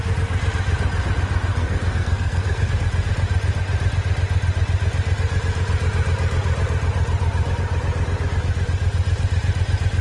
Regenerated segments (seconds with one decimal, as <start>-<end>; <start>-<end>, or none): 1.5-2.7

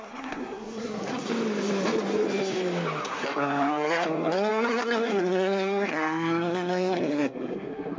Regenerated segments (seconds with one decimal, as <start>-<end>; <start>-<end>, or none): 0.0-1.3; 3.0-8.0

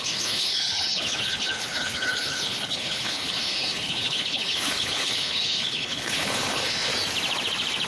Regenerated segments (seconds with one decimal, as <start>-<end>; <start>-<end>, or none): 0.0-6.9

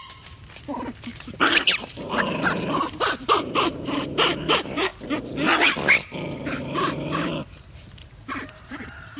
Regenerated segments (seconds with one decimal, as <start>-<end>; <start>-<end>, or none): 0.0-4.9; 6.3-9.2